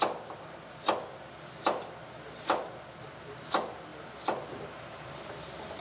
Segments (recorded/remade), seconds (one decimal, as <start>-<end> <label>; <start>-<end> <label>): 0.0-5.8 recorded